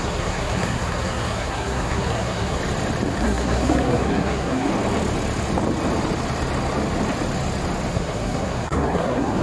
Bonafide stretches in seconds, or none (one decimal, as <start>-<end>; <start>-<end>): 2.6-3.2; 4.7-7.9